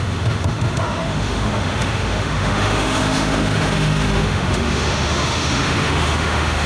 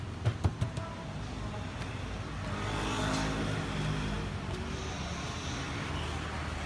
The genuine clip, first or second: second